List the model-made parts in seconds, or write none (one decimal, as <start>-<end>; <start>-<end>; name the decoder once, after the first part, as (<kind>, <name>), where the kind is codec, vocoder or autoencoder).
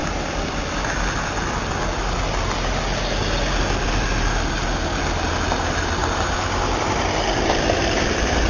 0.0-1.2 (vocoder, BigVGAN v2); 6.0-8.5